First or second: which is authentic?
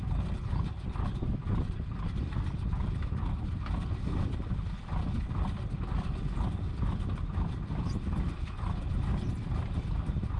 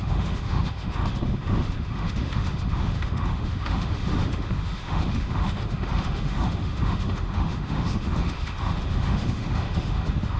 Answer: first